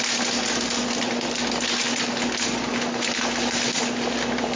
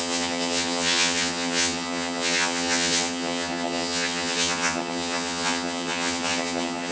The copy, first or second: second